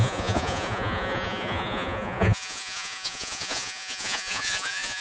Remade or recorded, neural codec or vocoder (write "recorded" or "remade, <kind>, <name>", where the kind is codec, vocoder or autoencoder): remade, vocoder, Vocos